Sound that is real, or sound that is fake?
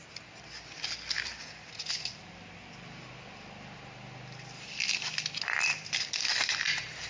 real